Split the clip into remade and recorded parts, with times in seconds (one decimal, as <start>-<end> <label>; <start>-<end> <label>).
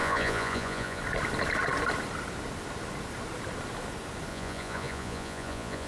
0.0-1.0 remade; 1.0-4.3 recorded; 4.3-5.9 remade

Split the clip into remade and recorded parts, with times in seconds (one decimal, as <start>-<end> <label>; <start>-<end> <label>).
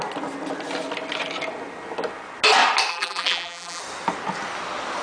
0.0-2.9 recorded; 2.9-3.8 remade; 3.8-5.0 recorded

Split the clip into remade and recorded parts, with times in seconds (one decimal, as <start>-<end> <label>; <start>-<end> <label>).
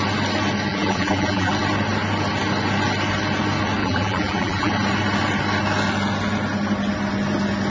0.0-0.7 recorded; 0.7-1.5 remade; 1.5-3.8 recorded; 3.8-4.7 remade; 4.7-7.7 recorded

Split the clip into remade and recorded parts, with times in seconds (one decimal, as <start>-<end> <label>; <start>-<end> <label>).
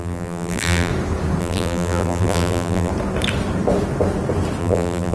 0.0-0.9 remade; 0.9-1.4 recorded; 1.4-2.9 remade; 2.9-4.6 recorded; 4.6-5.1 remade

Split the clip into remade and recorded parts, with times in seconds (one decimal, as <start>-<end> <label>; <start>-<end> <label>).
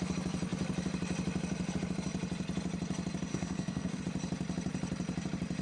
0.0-3.3 recorded; 3.3-4.0 remade; 4.0-5.6 recorded